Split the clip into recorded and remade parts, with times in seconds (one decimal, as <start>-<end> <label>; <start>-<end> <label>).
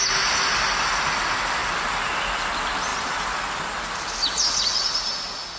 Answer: 0.0-5.6 recorded